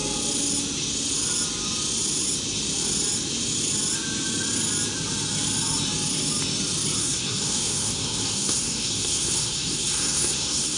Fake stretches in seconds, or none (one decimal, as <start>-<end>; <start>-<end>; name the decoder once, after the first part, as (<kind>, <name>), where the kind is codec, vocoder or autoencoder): 7.0-10.8 (codec, SNAC)